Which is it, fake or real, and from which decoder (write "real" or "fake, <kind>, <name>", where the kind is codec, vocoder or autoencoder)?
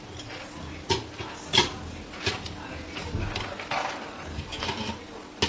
real